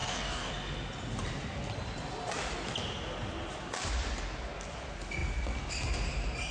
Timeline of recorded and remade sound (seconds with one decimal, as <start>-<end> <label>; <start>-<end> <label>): 0.0-0.5 remade; 0.5-6.5 recorded